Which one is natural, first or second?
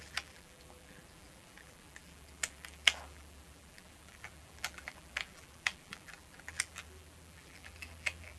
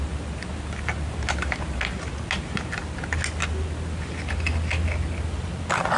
second